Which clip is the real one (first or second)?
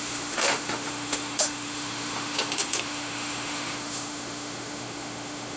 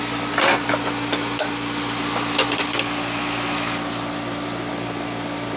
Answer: second